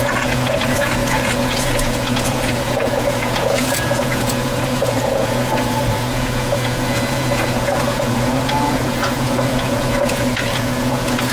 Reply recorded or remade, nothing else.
remade